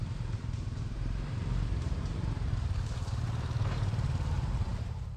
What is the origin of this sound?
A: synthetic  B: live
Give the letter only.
A